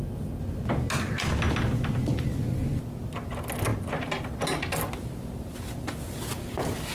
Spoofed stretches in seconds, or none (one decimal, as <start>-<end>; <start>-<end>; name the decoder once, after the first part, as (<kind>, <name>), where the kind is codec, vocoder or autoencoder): none